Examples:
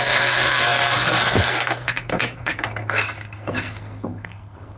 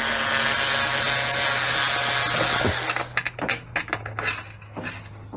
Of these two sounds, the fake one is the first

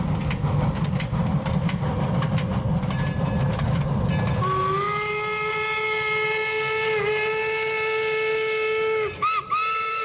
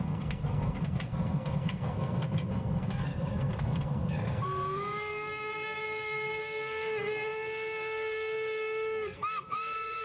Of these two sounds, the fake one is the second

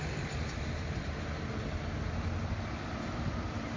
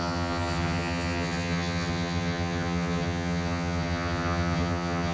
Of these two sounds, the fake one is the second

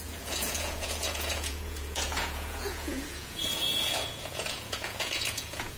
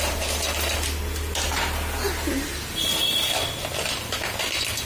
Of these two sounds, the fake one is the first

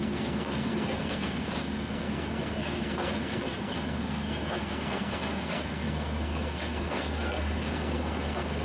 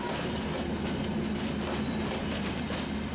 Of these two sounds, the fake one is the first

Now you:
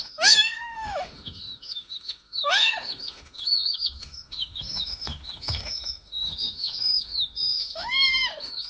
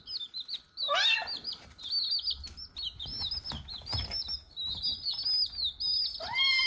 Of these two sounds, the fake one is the first